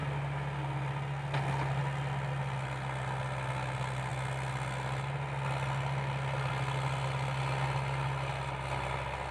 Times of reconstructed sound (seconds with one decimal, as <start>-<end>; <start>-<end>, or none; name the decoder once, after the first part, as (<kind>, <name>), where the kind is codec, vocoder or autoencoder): none